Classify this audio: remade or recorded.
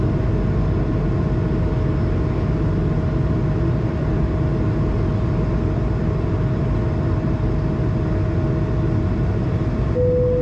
recorded